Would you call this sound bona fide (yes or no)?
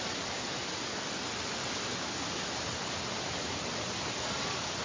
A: yes